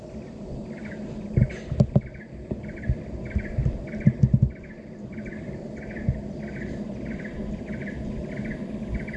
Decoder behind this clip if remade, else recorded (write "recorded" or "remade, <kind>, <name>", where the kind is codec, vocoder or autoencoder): recorded